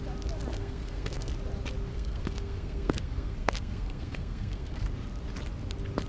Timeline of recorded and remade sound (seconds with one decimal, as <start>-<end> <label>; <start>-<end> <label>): 0.0-0.5 recorded; 0.5-1.3 remade; 1.3-1.9 recorded; 1.9-4.9 remade; 4.9-6.1 recorded